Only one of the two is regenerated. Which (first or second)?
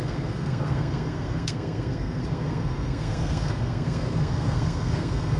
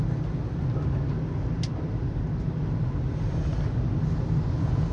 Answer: first